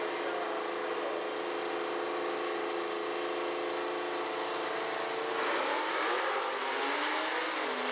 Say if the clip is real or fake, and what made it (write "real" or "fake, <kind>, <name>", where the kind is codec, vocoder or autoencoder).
real